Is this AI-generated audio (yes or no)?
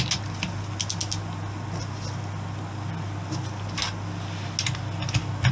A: no